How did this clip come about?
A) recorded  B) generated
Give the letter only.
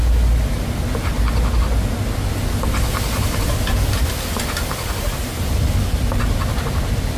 A